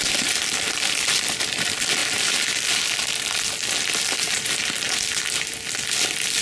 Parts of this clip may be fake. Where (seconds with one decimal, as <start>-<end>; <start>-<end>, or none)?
0.0-2.0; 5.0-6.4